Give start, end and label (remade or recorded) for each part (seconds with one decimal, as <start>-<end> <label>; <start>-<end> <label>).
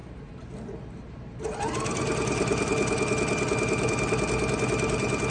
0.0-5.3 recorded